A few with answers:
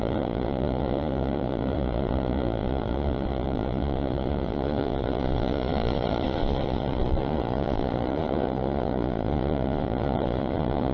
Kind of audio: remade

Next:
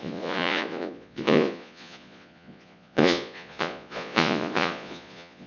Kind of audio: remade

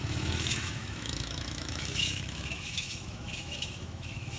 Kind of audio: remade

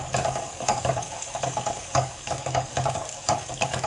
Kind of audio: remade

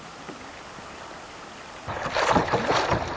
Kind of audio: recorded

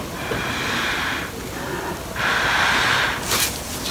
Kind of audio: recorded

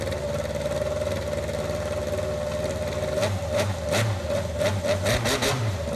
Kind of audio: recorded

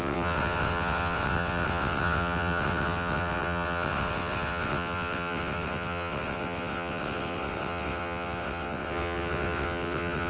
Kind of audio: remade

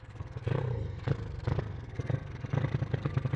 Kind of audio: remade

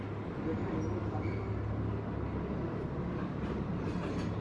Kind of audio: recorded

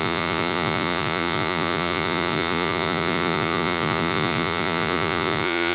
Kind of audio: remade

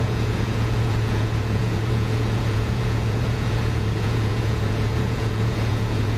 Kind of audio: remade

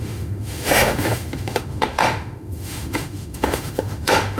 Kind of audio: remade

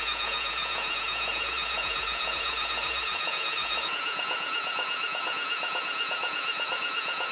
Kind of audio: remade